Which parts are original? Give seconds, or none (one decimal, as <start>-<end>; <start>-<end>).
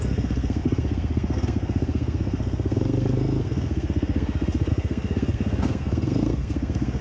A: none